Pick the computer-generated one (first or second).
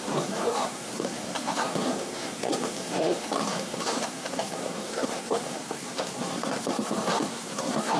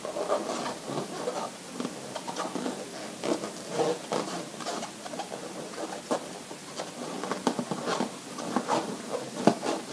first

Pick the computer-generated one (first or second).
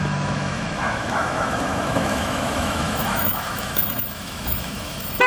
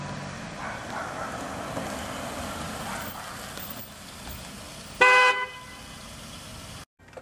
first